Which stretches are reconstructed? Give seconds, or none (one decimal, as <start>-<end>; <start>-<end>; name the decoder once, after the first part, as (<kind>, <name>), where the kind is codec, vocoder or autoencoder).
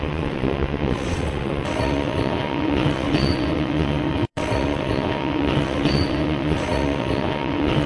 0.0-7.9 (vocoder, WaveNeXt)